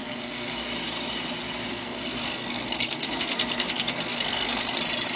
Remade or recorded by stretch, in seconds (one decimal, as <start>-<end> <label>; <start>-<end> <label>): 0.0-0.6 remade; 0.6-1.7 recorded; 1.7-4.8 remade; 4.8-5.2 recorded